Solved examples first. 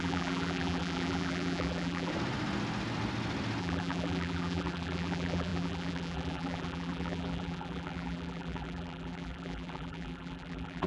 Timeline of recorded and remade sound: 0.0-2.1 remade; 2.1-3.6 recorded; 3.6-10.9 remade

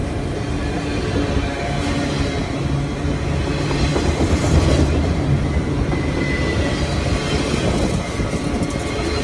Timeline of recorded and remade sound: 0.0-9.2 recorded

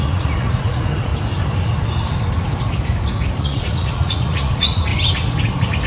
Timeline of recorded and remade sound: 0.0-1.1 remade; 1.1-3.4 recorded; 3.4-4.9 remade; 4.9-5.9 recorded

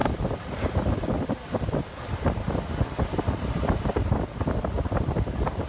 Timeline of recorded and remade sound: 0.0-5.7 recorded